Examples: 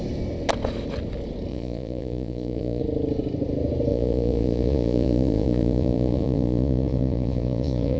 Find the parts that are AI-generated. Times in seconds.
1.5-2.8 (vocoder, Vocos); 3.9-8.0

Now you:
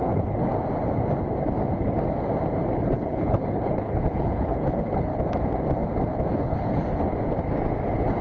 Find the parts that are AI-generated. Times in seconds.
0.0-0.5 (codec, HILCodec); 2.7-5.1; 6.3-7.0

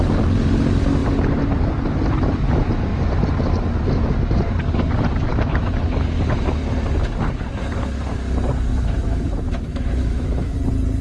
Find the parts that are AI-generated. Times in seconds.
5.3-5.8 (autoencoder, DAC-VAE); 8.7-10.6